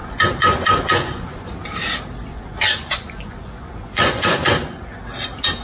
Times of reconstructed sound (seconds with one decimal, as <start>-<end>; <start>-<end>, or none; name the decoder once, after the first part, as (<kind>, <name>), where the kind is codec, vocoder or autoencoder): 0.0-1.5 (vocoder, Vocos); 2.3-4.9